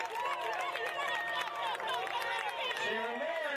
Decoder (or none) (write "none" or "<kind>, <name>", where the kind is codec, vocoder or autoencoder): none